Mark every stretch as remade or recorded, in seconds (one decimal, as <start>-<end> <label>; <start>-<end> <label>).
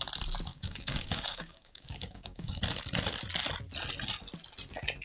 0.0-0.5 recorded; 0.5-2.6 remade; 2.6-5.0 recorded